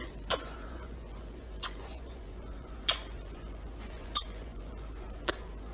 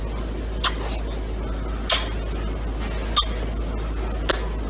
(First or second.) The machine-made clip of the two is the first